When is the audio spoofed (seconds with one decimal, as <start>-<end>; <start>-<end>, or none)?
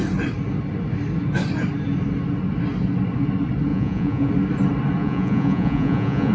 3.7-4.3; 5.0-6.3